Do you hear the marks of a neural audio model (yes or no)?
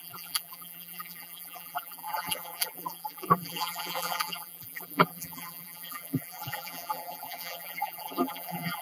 yes